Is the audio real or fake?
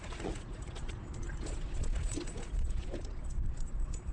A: fake